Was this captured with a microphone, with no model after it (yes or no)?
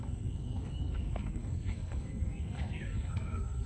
no